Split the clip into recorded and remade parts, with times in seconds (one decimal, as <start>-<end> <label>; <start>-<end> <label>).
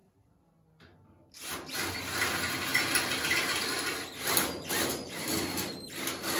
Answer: 0.0-1.9 recorded; 1.9-2.7 remade; 2.7-3.6 recorded; 3.6-6.4 remade